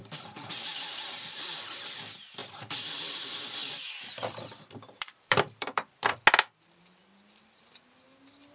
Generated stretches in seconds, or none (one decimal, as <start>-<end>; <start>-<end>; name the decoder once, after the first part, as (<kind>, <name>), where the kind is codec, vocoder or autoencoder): 2.4-6.2 (vocoder, BigVGAN v2)